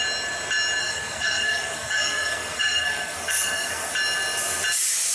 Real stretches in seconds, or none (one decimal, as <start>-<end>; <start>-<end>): 0.0-0.8; 3.9-5.1